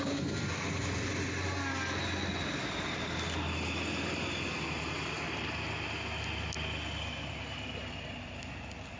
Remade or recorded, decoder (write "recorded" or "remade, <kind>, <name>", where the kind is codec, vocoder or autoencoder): recorded